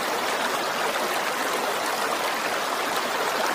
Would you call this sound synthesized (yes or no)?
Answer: no